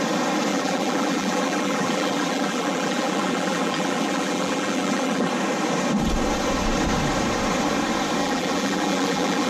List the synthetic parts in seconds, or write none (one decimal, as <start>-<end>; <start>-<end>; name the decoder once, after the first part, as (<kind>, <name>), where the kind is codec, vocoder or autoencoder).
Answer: 0.5-5.3 (vocoder, BigVGAN v2); 8.2-9.5